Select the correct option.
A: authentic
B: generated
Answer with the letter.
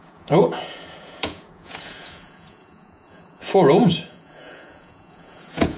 B